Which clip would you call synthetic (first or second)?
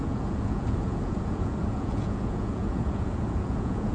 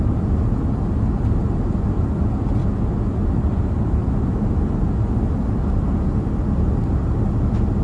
first